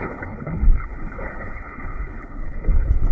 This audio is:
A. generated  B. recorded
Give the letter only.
A